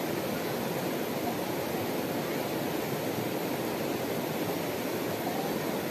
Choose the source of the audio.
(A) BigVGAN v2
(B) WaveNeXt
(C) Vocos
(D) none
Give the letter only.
D